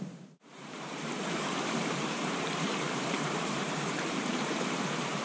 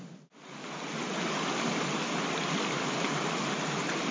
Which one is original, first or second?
second